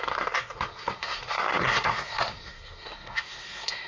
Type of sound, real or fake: fake